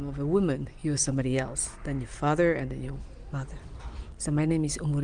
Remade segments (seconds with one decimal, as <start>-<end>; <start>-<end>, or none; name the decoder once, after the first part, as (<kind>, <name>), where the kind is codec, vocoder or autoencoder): none